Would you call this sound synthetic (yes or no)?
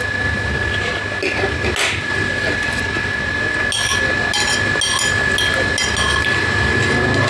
no